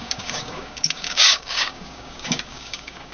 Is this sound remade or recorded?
remade